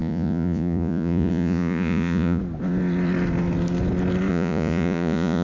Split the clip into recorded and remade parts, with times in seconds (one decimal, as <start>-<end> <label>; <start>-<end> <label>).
0.0-2.4 remade; 2.4-4.3 recorded; 4.3-5.4 remade